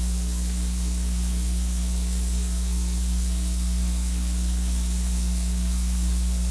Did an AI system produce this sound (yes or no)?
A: yes